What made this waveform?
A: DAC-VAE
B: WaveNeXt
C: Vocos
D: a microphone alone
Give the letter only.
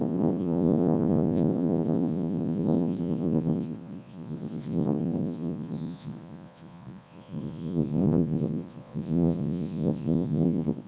C